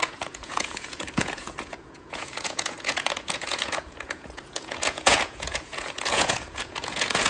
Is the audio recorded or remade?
remade